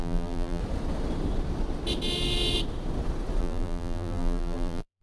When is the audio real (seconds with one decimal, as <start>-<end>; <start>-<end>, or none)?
0.6-3.4